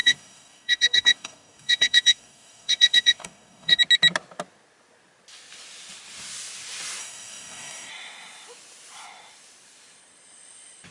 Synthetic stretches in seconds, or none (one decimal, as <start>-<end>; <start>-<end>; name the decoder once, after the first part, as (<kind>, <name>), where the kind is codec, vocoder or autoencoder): 0.0-3.8 (codec, DAC); 7.0-7.9